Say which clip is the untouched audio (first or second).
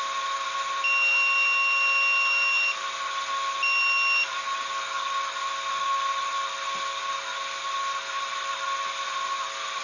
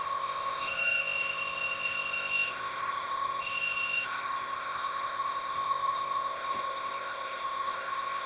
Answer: first